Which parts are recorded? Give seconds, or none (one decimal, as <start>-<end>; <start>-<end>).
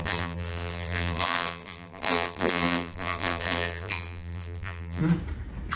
5.0-5.8